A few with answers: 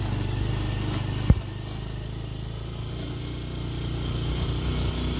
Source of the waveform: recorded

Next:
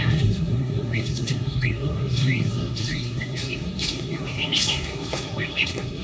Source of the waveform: remade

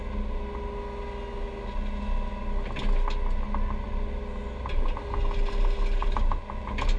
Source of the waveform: recorded